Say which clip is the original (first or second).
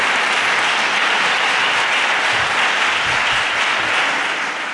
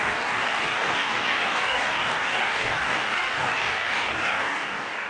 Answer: first